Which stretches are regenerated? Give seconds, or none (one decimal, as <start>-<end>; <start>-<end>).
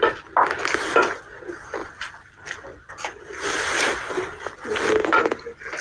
none